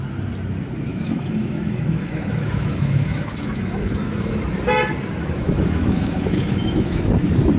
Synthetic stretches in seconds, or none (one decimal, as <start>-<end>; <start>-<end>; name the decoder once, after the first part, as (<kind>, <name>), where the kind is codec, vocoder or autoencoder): 0.9-4.4 (autoencoder, DAC-VAE); 5.2-7.0